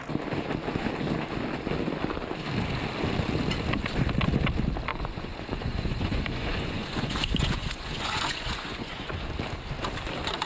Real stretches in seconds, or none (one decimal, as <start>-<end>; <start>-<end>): 0.0-4.9; 9.2-10.5